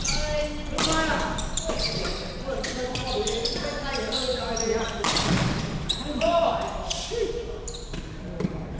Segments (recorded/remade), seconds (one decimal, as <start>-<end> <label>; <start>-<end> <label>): 0.0-8.8 recorded